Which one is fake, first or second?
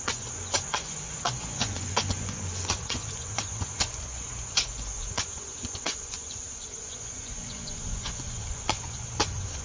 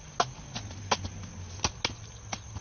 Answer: first